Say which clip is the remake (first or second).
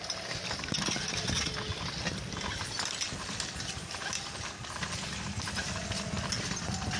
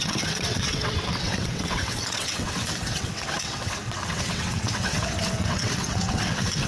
second